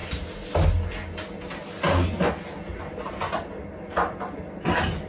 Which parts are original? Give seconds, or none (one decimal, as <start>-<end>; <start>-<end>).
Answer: 0.0-5.1